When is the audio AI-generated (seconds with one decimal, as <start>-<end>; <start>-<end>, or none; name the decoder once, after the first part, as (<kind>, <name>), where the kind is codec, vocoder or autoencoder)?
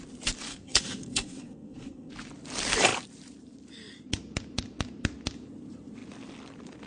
0.5-2.1 (codec, SNAC)